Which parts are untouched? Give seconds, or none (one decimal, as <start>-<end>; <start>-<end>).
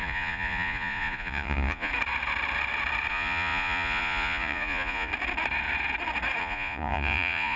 1.9-3.1; 5.1-6.4